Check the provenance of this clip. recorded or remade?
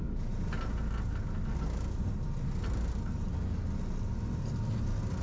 recorded